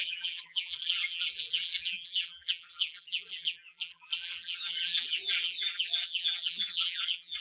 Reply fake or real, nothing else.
fake